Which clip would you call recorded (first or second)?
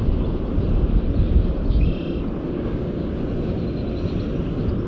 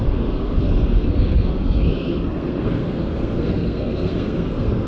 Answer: first